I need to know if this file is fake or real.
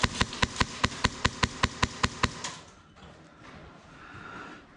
real